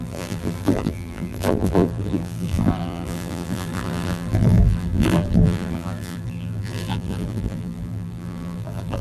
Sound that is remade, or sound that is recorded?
remade